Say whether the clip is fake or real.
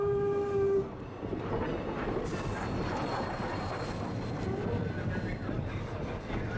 real